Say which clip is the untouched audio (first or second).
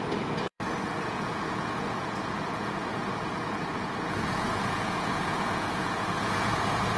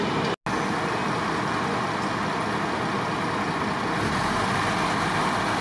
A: second